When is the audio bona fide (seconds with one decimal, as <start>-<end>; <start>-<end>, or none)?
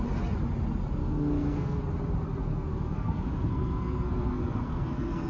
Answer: 0.0-1.0; 1.8-2.4